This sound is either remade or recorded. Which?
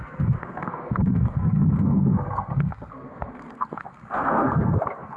remade